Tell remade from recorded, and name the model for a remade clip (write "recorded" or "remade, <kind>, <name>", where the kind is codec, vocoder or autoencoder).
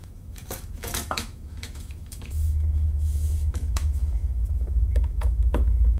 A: remade, autoencoder, DAC-VAE